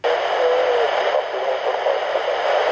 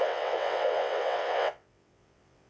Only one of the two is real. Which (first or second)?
first